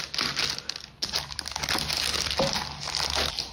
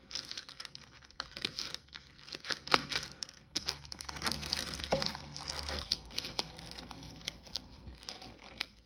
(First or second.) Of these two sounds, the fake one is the second